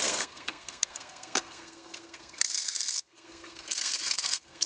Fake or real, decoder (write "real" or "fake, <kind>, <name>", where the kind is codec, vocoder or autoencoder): fake, codec, SNAC